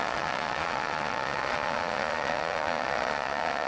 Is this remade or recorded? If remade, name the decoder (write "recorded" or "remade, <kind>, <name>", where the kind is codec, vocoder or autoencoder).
remade, vocoder, Vocos